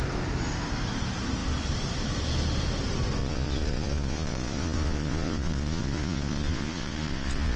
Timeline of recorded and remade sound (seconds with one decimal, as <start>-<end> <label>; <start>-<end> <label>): 0.0-3.2 recorded; 3.2-7.6 remade